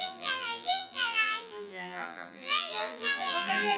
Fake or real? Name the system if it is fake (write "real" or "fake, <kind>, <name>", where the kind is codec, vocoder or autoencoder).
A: fake, vocoder, BigVGAN v2